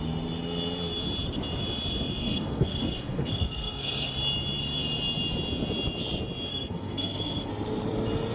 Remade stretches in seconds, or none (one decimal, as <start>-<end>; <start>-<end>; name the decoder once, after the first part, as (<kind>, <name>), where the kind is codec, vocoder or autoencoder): 2.2-4.1 (codec, SNAC); 6.5-7.5